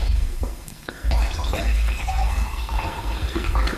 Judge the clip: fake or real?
fake